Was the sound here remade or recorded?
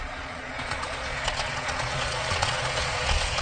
remade